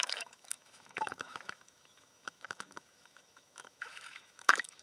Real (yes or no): no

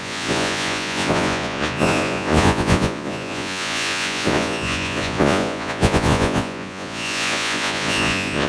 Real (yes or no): no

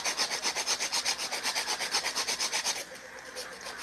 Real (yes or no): yes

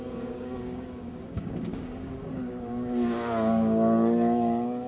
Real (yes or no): no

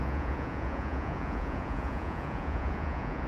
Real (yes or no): no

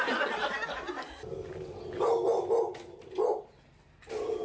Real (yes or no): yes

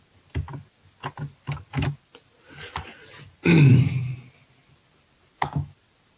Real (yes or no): yes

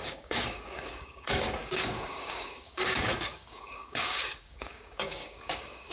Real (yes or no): no